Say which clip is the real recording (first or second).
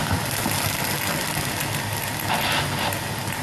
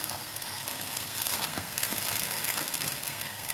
first